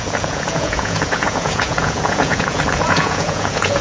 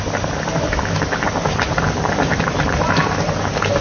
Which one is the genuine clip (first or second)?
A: second